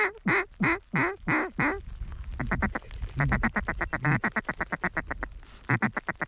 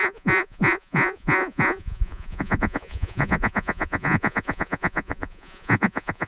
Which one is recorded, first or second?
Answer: first